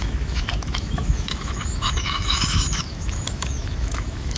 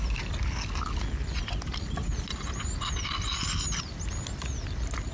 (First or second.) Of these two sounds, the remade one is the first